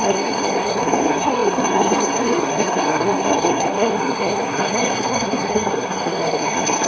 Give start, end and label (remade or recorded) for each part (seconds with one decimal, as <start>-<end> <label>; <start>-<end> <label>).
0.0-6.9 remade